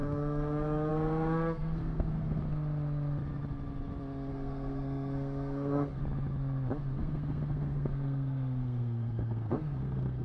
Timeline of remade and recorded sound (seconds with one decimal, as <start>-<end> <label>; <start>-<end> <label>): 0.0-2.4 remade; 2.4-4.3 recorded; 4.3-6.0 remade; 6.0-6.8 recorded; 6.8-10.2 remade